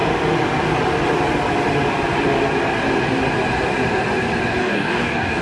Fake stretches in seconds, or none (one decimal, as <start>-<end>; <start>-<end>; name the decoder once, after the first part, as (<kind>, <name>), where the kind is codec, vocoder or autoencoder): 4.6-5.4 (codec, DAC)